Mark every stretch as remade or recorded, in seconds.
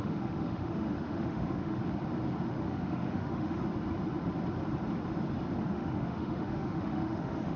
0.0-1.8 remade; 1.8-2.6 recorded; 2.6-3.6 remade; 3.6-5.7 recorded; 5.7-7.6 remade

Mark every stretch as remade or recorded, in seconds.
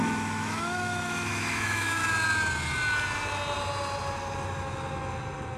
0.0-2.0 remade; 2.0-5.6 recorded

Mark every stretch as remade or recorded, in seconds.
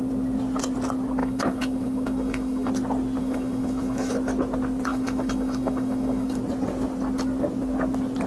0.0-1.2 recorded; 1.2-2.7 remade; 2.7-3.2 recorded; 3.2-4.1 remade; 4.1-4.9 recorded; 4.9-6.4 remade; 6.4-8.3 recorded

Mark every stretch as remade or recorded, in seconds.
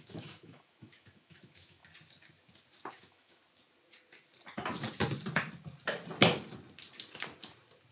0.0-1.8 remade; 1.8-2.9 recorded; 2.9-3.4 remade; 3.4-7.9 recorded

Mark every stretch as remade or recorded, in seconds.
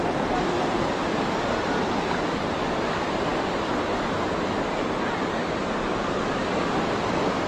0.0-7.5 recorded